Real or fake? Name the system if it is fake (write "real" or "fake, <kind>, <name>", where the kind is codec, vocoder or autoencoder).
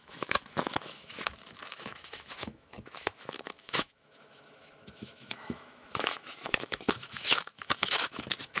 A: fake, autoencoder, DAC-VAE